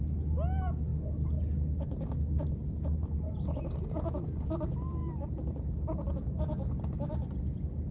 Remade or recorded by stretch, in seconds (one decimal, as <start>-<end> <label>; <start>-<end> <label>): 0.0-7.9 recorded